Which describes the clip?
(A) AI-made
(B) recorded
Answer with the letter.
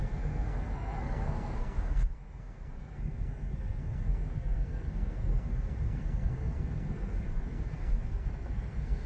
A